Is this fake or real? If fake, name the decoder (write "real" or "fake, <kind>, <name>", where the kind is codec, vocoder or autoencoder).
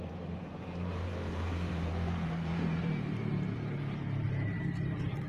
fake, vocoder, BigVGAN v2